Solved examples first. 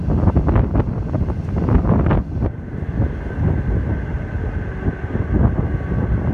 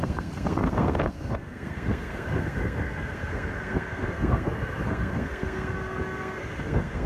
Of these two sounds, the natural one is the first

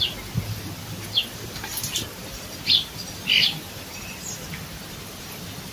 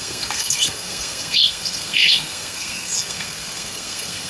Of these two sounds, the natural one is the first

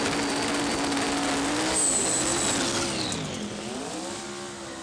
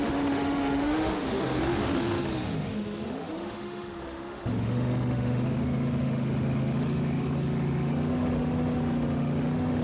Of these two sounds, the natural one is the first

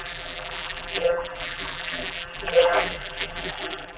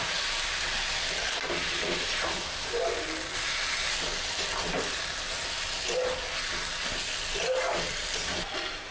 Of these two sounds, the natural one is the second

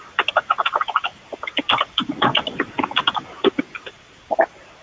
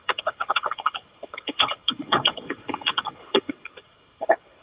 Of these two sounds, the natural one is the first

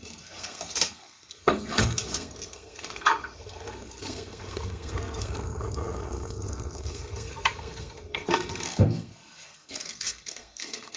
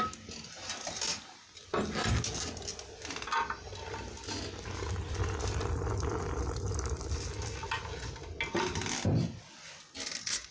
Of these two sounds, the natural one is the second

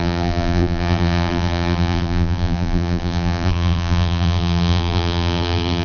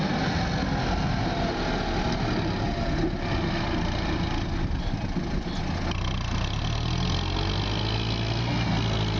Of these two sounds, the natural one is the second